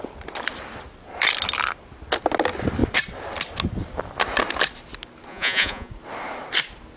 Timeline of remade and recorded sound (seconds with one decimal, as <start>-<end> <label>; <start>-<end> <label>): 0.0-5.3 recorded; 5.3-5.9 remade; 5.9-7.0 recorded